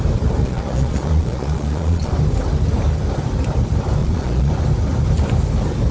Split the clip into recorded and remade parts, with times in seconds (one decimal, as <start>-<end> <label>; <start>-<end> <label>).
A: 0.0-0.4 recorded; 0.4-2.1 remade; 2.1-4.0 recorded; 4.0-4.5 remade; 4.5-5.9 recorded